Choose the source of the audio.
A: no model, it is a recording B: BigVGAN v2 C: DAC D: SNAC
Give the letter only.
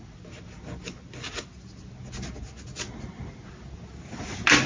A